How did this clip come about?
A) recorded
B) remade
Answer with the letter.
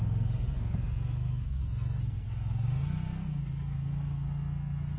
B